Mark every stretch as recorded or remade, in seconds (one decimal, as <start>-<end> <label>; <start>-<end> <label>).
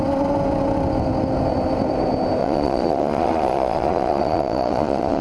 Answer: 0.0-2.4 recorded; 2.4-5.2 remade